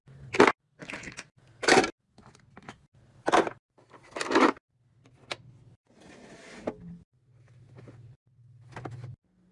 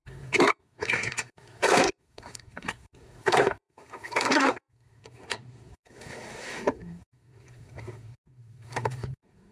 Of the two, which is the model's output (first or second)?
second